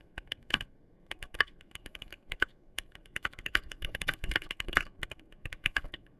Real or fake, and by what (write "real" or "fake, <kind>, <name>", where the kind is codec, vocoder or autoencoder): fake, codec, SNAC